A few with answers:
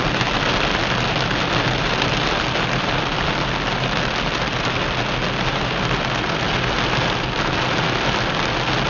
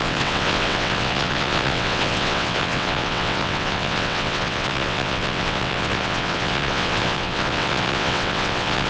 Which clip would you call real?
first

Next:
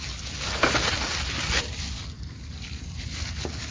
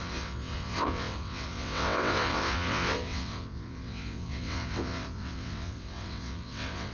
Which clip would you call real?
first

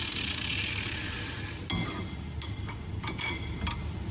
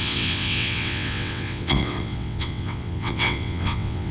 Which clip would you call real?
first